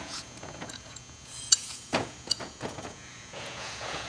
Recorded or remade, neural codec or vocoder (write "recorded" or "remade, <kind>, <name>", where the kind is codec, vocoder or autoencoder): remade, vocoder, Vocos